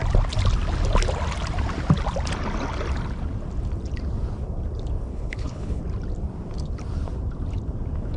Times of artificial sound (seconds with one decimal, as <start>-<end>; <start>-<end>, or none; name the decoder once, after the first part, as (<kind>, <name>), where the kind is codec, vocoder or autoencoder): 5.1-5.8 (codec, HILCodec)